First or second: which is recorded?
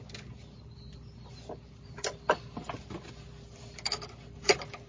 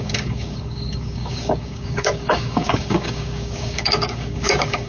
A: first